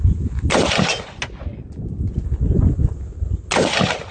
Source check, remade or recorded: recorded